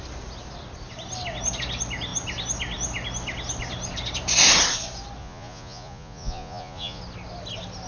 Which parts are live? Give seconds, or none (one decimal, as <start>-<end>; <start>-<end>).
0.0-5.2; 7.0-7.9